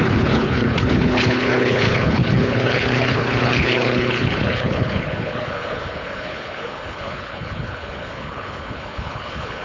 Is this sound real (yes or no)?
no